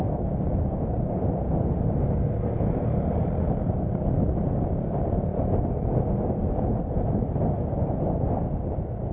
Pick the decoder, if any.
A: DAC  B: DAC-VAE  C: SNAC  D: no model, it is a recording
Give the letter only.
D